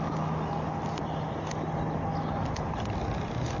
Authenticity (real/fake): real